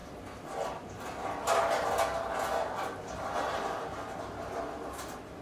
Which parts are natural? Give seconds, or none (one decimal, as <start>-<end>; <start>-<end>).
0.0-5.4